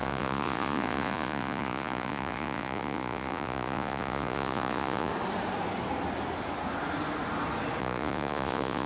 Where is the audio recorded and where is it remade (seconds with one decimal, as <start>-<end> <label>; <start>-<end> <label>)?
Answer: 0.0-5.1 remade; 5.1-7.8 recorded; 7.8-8.9 remade